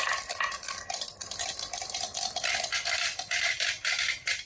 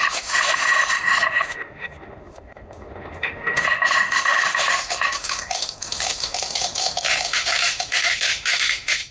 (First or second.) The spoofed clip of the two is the second